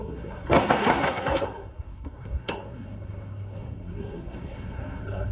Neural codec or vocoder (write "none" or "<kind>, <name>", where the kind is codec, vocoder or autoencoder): codec, SNAC